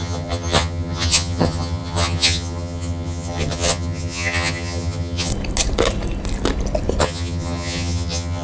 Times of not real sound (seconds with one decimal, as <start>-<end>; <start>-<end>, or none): 0.0-5.3; 7.0-8.4